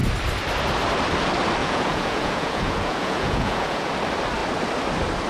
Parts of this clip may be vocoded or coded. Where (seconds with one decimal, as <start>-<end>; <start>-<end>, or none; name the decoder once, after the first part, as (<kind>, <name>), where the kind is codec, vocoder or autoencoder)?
1.6-3.9 (vocoder, Vocos)